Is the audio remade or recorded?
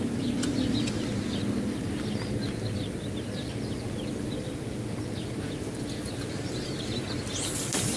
recorded